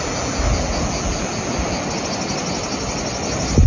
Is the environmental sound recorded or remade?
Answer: recorded